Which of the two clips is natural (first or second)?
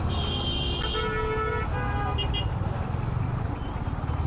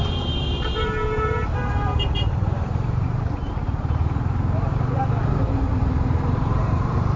first